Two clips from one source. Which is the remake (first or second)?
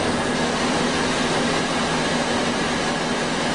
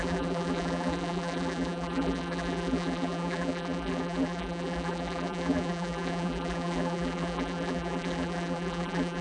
second